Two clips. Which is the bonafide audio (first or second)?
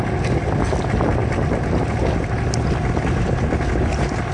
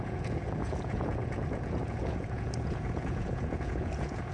first